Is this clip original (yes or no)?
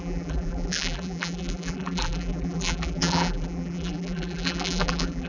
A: no